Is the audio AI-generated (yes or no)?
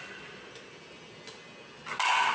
no